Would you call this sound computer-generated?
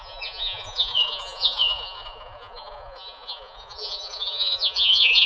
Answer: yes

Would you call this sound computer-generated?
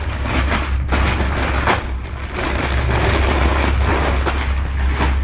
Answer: no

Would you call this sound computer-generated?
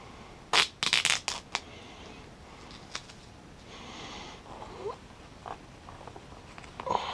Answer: no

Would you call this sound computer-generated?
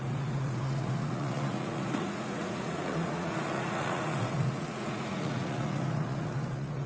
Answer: yes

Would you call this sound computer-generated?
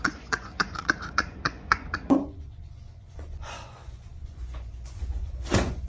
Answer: yes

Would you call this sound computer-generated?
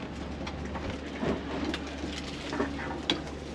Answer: no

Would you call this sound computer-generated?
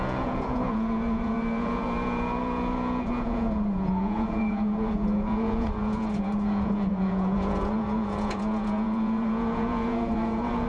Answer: yes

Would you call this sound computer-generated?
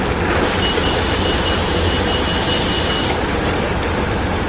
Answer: no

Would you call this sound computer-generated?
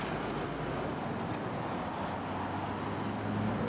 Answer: no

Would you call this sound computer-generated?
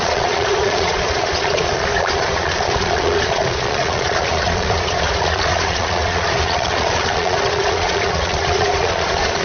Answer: yes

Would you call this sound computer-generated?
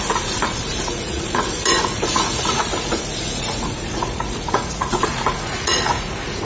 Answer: yes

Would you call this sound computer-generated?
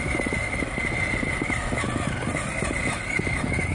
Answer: no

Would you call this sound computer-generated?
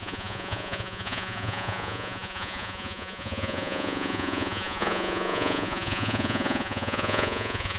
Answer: yes